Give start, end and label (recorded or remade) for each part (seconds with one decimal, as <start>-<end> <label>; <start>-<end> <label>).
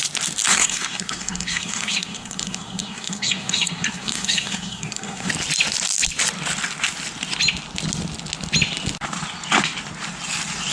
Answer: 0.0-0.5 recorded; 0.5-5.3 remade; 5.3-10.7 recorded